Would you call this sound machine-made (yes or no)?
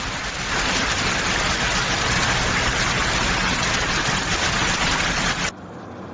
no